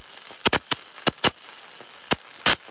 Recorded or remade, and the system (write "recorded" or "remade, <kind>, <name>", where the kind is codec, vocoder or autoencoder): recorded